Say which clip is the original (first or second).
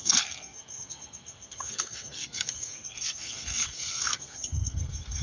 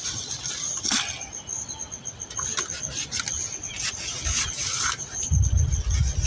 second